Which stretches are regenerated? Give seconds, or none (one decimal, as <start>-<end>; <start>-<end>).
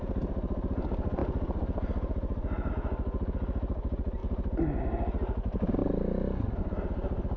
none